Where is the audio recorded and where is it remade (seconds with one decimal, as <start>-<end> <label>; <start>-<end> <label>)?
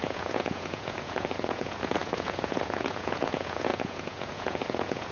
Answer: 0.0-5.1 remade